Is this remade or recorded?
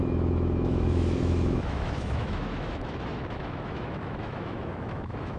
remade